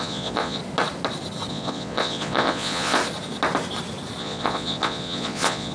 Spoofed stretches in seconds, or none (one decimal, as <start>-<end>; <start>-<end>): 0.0-0.6; 1.5-3.0; 4.2-5.7